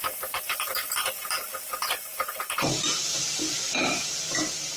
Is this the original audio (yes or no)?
no